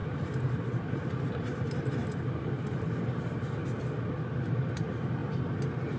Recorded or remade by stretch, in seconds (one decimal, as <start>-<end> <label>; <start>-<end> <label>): 0.0-3.6 remade; 3.6-4.5 recorded; 4.5-5.2 remade; 5.2-6.0 recorded